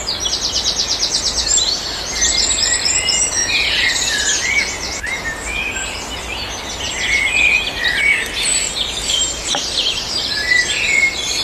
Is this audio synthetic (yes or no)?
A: no